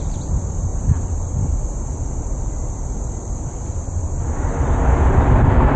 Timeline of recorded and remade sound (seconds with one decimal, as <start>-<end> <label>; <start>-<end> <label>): 0.0-0.7 recorded; 0.7-1.4 remade; 1.4-5.8 recorded